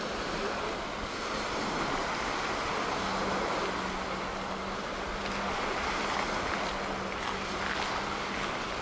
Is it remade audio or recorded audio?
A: recorded